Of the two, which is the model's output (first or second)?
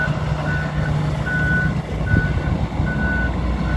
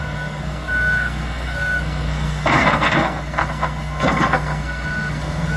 second